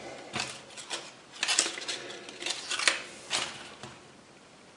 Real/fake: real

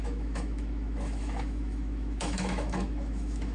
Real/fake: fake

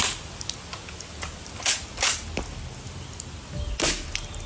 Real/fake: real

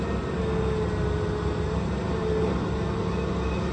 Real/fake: real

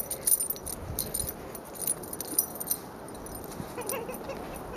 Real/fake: real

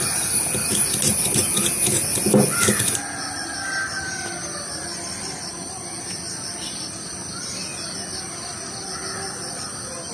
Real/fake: real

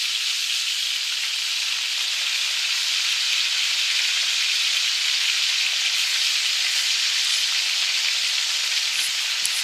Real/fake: real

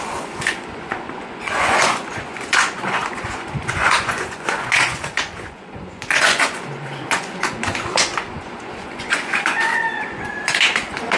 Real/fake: fake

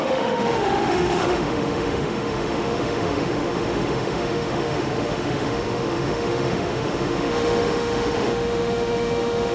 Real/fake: fake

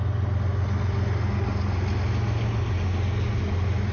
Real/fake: real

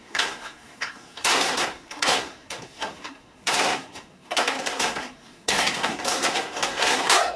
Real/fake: fake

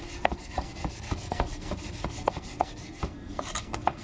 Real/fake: fake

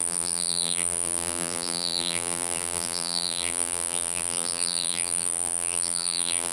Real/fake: fake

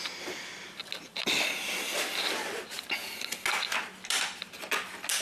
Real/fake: real